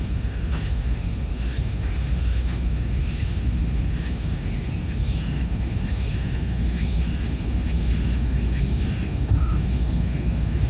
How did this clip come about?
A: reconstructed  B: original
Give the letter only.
A